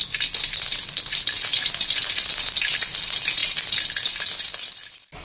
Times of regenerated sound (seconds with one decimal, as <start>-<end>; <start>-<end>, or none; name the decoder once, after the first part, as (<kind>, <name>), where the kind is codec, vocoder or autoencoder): none